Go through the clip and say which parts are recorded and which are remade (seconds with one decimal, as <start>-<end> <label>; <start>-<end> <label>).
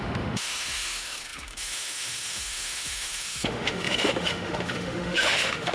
0.0-5.7 remade